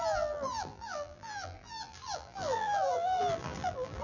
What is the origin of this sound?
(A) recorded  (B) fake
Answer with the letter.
B